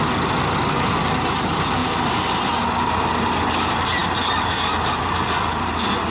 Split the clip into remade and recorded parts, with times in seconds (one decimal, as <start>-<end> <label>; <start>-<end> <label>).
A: 0.0-6.1 recorded